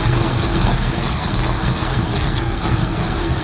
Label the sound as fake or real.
fake